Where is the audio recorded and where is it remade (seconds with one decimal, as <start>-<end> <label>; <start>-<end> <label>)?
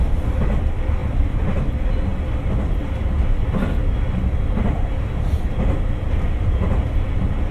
0.0-7.5 recorded